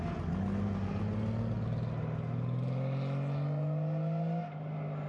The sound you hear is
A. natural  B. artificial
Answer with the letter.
A